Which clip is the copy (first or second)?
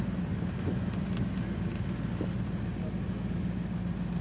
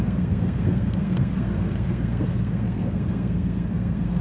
second